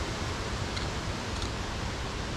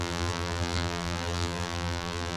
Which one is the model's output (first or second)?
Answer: second